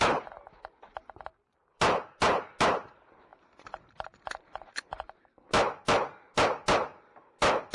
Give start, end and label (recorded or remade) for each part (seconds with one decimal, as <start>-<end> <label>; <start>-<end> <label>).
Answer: 0.0-7.7 recorded